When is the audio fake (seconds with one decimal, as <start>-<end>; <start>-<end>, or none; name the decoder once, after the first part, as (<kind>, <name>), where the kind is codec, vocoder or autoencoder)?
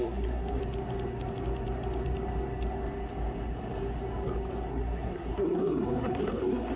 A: 0.0-0.6 (codec, SNAC); 4.7-6.8